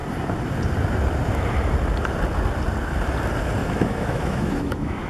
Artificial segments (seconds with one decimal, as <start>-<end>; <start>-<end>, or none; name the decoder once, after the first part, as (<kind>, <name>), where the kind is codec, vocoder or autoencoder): 3.6-5.1 (autoencoder, DAC-VAE)